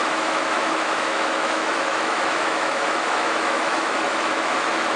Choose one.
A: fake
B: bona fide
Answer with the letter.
A